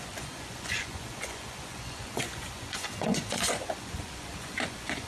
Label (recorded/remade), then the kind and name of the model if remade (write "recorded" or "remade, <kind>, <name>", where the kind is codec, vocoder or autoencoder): remade, vocoder, Vocos